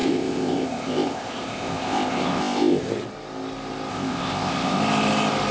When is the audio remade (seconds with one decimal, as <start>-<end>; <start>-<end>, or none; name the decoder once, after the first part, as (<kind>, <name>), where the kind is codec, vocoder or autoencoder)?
0.0-2.9 (codec, ZipCodec); 3.9-4.8